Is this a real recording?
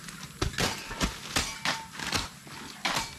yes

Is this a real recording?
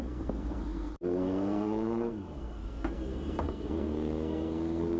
no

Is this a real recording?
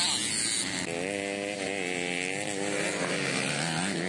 yes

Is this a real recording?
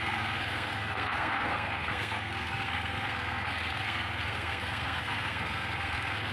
no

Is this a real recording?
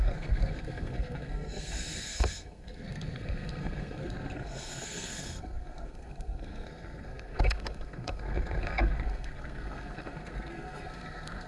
no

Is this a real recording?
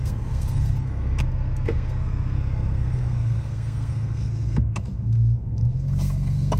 no